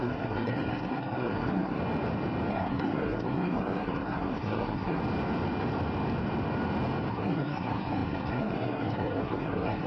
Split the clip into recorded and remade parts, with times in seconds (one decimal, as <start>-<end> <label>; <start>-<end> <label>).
0.0-1.8 remade; 1.8-2.5 recorded; 2.5-5.0 remade; 5.0-7.1 recorded; 7.1-9.9 remade